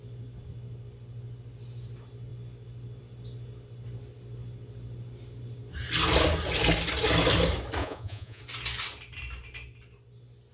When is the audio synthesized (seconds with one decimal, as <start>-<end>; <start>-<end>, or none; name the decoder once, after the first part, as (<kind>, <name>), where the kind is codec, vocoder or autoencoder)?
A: 7.8-8.4 (vocoder, Vocos)